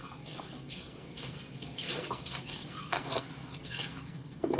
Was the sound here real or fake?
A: fake